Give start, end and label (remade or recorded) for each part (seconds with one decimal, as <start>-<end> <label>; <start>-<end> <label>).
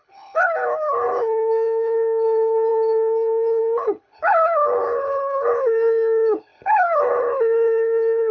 0.0-8.3 remade